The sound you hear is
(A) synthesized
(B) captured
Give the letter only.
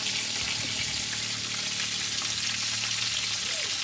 B